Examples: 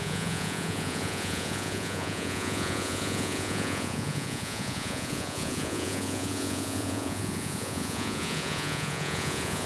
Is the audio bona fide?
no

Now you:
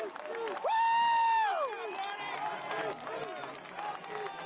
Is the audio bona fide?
yes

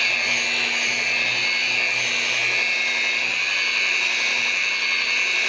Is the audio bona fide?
yes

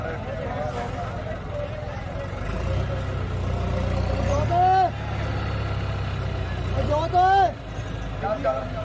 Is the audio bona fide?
yes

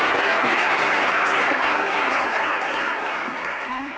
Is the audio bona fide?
no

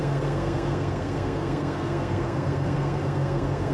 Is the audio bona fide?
no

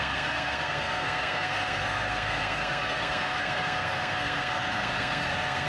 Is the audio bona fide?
no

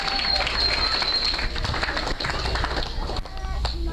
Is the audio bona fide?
yes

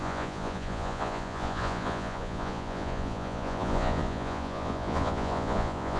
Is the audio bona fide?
no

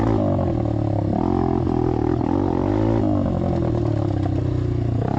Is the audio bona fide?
yes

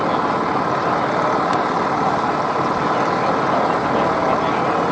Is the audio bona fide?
yes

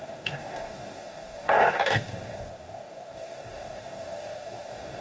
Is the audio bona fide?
no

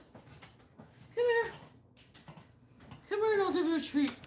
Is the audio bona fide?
yes